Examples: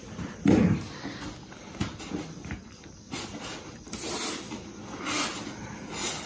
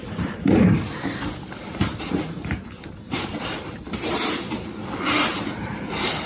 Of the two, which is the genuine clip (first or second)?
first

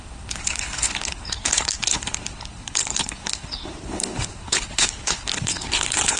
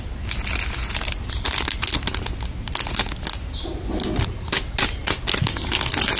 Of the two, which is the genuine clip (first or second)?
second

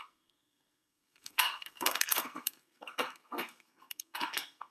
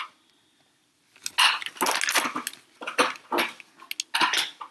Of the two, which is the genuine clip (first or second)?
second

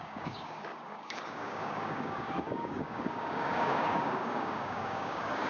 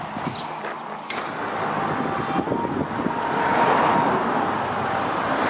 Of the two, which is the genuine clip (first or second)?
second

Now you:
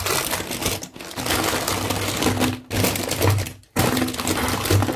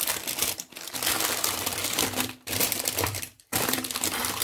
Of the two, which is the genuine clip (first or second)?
first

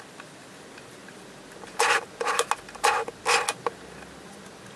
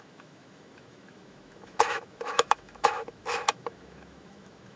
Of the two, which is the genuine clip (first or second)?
first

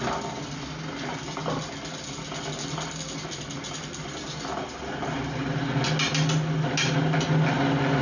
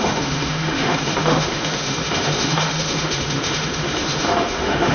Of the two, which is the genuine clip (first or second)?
first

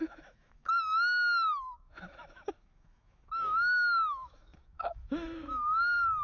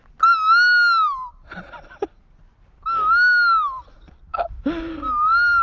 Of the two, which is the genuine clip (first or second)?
second